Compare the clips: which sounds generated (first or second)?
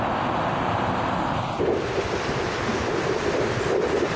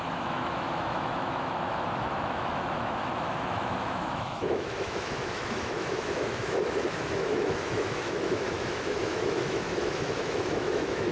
second